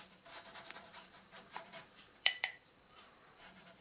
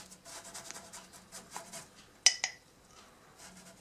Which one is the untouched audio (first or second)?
second